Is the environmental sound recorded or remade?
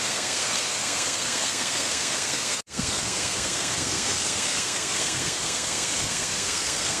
remade